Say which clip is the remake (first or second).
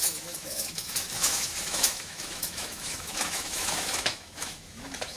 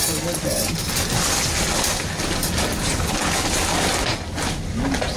first